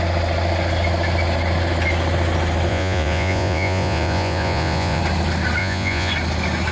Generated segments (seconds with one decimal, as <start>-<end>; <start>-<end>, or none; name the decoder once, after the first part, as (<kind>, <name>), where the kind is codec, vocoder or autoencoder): 2.7-5.0 (vocoder, Vocos); 5.6-6.1